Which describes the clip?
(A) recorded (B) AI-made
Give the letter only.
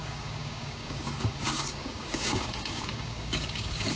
B